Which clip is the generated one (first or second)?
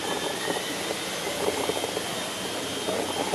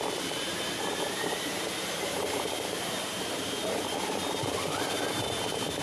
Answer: second